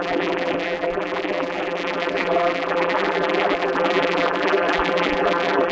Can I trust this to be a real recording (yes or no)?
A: no